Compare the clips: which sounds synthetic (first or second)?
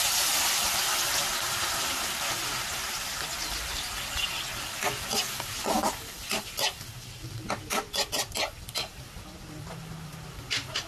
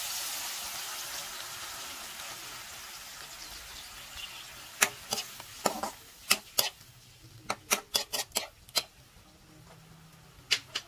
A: first